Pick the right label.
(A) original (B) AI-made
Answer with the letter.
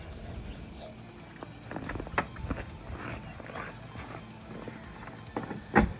A